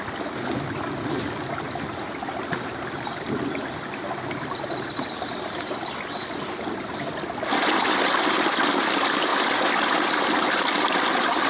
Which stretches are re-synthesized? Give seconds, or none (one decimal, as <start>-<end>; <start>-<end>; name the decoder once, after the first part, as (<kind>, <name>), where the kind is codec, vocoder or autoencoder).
none